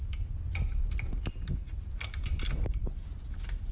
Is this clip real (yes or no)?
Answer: yes